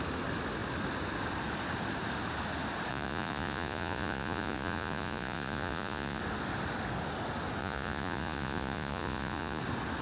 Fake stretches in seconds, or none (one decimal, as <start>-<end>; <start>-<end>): 2.9-6.2; 7.6-9.6